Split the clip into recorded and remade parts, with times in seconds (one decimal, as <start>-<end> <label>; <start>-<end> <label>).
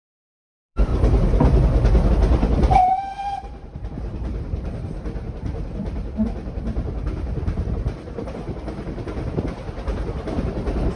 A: 0.0-0.9 remade; 0.9-2.1 recorded; 2.1-11.0 remade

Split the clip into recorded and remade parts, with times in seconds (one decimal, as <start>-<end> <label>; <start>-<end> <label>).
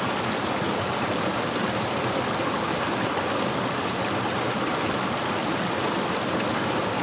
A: 0.0-1.3 recorded; 1.3-5.5 remade; 5.5-7.0 recorded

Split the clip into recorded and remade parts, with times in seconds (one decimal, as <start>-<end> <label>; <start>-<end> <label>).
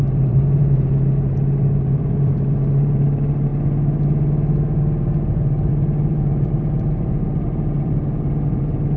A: 0.0-3.5 remade; 3.5-5.7 recorded; 5.7-9.0 remade